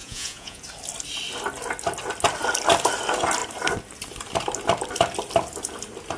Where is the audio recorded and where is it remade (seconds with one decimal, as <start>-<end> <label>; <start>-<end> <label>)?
0.0-0.6 remade; 0.6-6.2 recorded